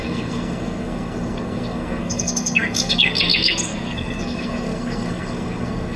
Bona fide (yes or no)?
no